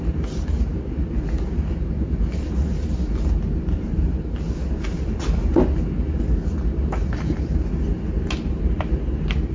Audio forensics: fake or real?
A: real